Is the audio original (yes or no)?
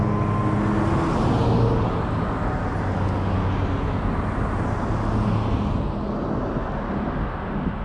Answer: yes